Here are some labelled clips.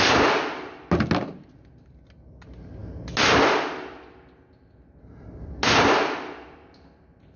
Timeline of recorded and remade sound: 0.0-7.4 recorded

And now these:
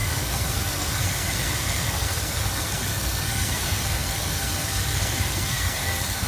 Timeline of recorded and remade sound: 0.0-6.3 remade